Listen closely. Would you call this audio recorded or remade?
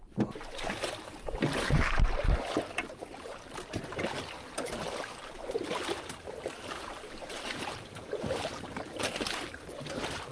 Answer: recorded